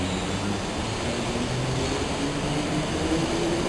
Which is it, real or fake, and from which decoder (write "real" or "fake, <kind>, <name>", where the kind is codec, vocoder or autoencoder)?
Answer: real